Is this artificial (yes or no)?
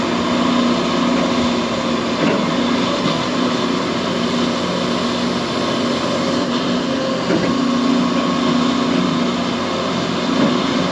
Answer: no